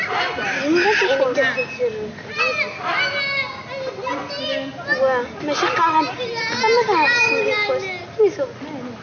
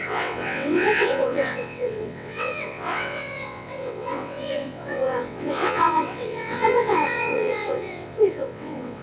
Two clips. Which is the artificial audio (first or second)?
second